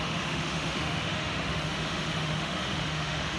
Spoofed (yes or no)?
yes